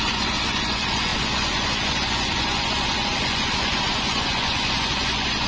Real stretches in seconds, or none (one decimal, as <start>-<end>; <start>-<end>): none